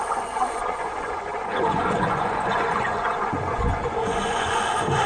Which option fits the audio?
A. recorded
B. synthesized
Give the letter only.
B